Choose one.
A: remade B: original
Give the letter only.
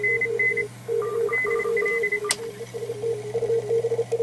B